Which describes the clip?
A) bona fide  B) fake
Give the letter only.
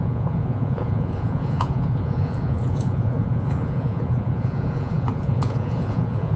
B